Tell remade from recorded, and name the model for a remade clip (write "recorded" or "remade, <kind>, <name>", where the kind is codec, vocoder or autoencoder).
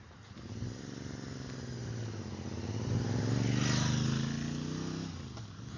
recorded